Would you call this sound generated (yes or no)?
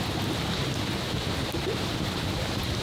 no